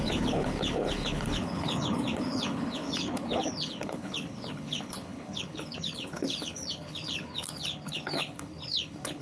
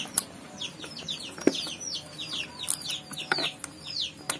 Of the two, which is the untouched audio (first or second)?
second